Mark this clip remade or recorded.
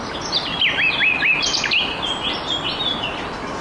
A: recorded